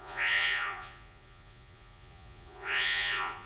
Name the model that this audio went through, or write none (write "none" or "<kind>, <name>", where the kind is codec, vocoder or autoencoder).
vocoder, Vocos